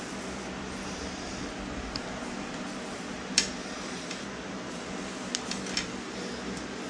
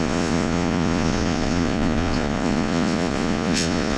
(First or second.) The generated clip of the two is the second